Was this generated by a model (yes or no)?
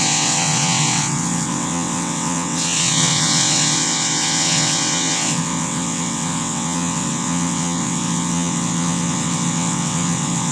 yes